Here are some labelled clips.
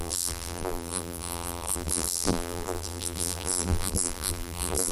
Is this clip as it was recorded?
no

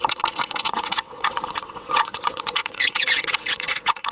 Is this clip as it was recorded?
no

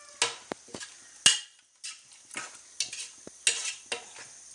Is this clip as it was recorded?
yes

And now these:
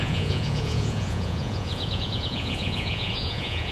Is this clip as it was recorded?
no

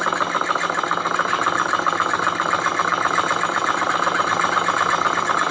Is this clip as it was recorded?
yes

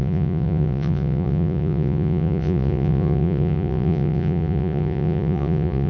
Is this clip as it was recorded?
no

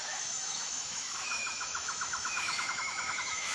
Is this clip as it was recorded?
no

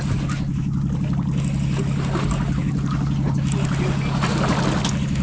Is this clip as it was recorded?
yes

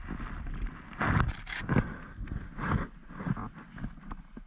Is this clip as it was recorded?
yes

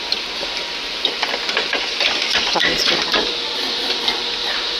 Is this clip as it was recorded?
no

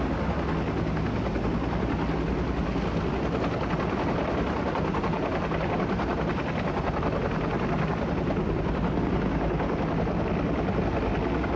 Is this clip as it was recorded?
yes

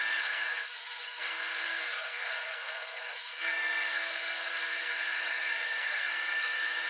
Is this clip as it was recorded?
no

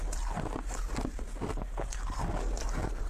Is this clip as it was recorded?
yes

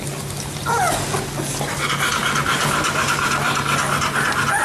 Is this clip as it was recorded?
yes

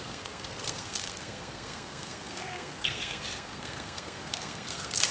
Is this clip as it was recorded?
no